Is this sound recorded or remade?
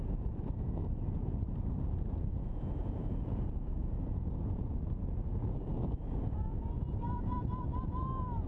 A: remade